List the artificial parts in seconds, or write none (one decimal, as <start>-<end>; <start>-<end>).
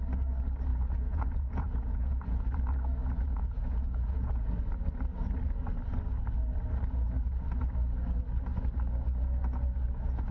0.7-2.5; 3.0-4.5